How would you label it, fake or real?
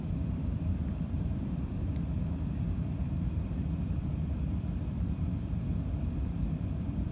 fake